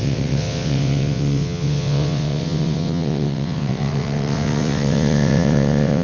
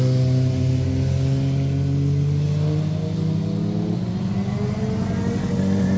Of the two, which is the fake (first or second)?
first